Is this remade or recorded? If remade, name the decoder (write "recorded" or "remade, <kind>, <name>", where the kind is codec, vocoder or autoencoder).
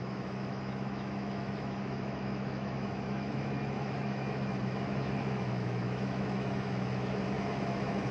remade, autoencoder, DAC-VAE